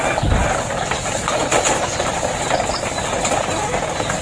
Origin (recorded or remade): recorded